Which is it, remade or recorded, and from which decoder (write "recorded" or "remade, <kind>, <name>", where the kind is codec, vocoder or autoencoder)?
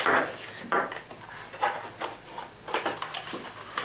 recorded